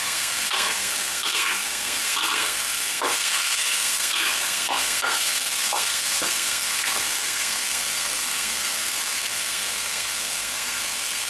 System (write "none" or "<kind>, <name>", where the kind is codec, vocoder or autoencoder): codec, SNAC